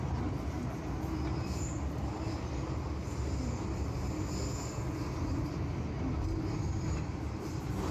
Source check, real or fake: real